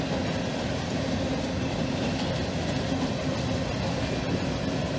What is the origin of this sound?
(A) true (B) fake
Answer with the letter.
A